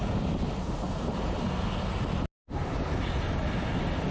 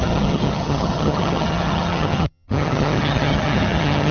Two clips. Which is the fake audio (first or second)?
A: second